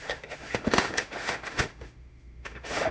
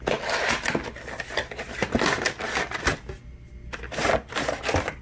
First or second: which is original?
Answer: second